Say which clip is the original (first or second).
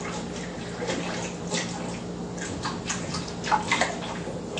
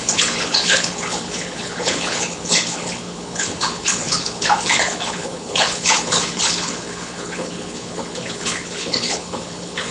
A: first